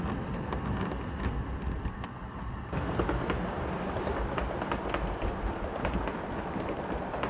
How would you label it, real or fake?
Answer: real